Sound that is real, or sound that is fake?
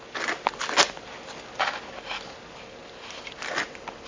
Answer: real